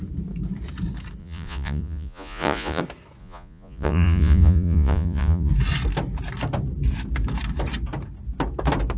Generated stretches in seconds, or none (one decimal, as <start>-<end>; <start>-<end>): 1.2-2.8; 3.2-5.5